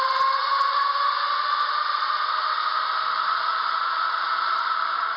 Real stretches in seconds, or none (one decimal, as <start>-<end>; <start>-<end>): 0.4-3.5